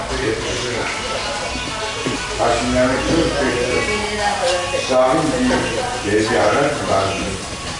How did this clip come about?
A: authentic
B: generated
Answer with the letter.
A